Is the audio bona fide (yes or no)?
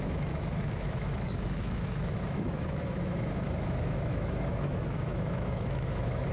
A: no